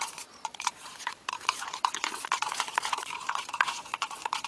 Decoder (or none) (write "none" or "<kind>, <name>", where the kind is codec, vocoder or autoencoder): vocoder, Vocos